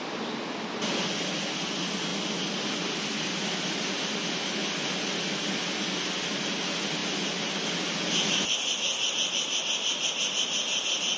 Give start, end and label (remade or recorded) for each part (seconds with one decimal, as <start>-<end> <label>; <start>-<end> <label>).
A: 0.0-11.2 recorded